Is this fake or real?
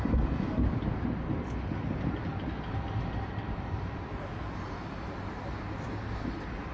real